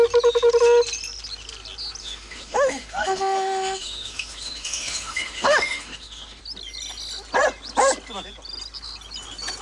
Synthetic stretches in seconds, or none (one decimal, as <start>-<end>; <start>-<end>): 2.0-6.4